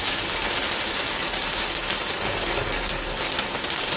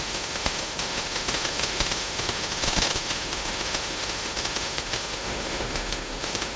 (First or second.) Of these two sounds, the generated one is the second